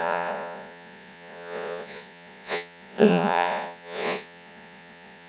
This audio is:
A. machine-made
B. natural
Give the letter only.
A